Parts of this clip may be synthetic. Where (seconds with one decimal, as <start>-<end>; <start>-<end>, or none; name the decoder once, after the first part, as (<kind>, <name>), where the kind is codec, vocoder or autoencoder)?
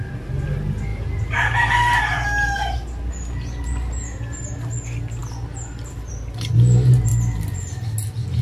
0.9-1.7 (vocoder, BigVGAN v2)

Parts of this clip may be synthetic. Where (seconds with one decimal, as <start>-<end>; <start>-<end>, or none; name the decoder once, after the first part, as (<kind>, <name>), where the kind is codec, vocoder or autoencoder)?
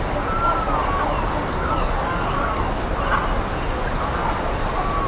1.4-2.9 (codec, DAC)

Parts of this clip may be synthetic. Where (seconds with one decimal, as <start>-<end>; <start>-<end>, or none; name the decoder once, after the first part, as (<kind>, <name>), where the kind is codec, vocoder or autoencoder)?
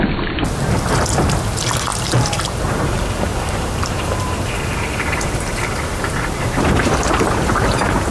1.9-2.6 (vocoder, BigVGAN v2); 3.3-8.1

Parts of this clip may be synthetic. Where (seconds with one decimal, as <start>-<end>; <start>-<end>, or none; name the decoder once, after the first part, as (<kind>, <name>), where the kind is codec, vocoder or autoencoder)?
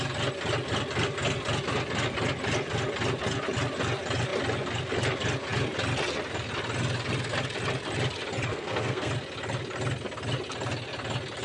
8.5-9.1 (codec, SNAC)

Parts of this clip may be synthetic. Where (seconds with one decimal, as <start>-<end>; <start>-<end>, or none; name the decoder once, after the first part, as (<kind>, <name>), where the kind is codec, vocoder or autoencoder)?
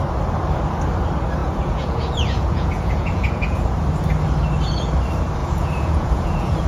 1.4-3.7 (vocoder, Vocos); 5.4-6.7